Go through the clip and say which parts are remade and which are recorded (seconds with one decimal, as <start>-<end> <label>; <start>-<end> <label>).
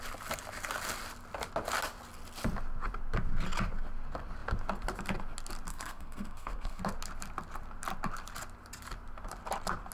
0.0-5.7 recorded; 5.7-6.8 remade; 6.8-9.9 recorded